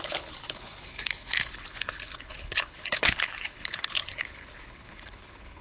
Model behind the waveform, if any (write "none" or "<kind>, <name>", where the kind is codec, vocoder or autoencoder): codec, HILCodec